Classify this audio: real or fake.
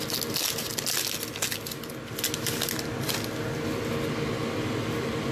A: real